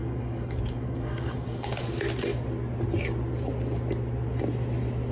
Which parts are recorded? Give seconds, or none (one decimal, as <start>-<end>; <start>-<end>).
1.8-5.1